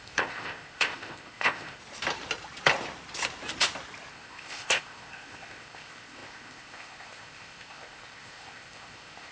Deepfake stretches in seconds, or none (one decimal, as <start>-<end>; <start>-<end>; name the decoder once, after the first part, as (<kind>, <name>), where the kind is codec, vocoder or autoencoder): 0.0-1.8 (codec, ZipCodec); 4.1-9.3